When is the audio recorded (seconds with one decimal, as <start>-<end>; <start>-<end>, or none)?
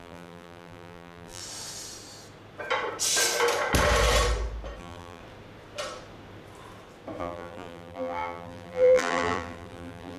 1.4-4.8; 5.2-7.2